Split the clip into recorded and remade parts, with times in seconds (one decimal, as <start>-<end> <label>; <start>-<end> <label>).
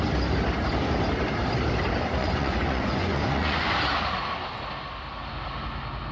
0.0-2.2 recorded; 2.2-3.6 remade; 3.6-6.1 recorded